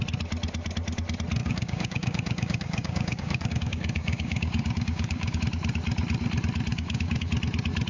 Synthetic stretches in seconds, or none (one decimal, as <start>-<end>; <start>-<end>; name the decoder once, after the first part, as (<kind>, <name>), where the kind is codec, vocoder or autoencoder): 1.4-5.4 (codec, DAC); 6.7-7.3